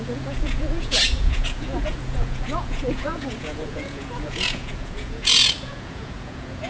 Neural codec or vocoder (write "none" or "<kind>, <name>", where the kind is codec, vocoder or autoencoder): vocoder, Vocos